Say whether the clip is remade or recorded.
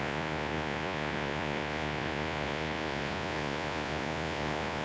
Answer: remade